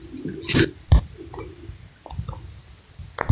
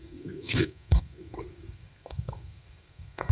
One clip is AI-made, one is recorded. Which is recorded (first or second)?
first